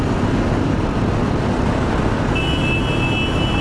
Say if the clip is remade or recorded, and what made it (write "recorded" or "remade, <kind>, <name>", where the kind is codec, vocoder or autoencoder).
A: recorded